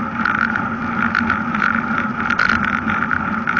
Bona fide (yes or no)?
yes